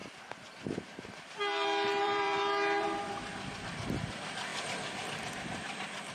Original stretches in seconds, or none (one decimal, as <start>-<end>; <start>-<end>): 0.0-2.0; 2.4-3.6; 4.5-6.1